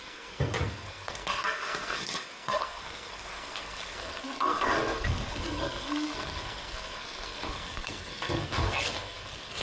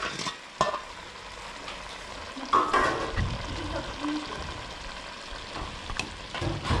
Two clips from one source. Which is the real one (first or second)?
second